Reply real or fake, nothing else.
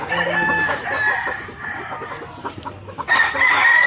real